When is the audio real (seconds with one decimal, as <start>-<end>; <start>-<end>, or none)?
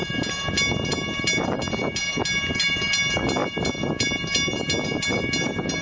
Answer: 0.0-5.8